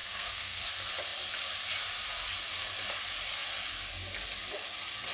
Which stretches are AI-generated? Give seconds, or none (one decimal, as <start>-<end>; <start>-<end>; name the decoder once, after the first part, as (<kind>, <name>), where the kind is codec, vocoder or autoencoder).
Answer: 0.0-0.6 (codec, SNAC)